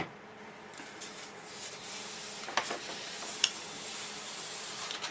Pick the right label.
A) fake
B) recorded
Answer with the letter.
B